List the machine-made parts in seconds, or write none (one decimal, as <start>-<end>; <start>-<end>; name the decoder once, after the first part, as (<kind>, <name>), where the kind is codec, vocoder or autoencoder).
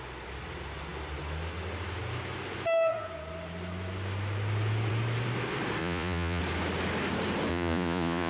5.8-6.4 (vocoder, Vocos); 7.5-8.3